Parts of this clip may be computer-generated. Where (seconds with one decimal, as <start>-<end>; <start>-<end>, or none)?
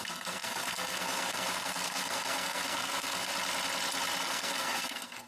0.0-3.3; 4.2-5.3